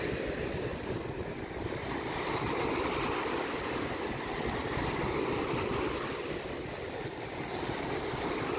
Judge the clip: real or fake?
real